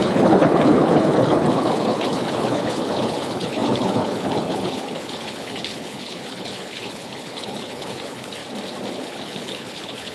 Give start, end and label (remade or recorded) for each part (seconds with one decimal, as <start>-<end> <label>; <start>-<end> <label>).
0.0-8.4 remade; 8.4-8.9 recorded; 8.9-10.1 remade